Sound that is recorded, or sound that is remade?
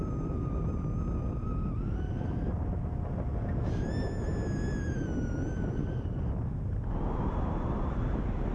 recorded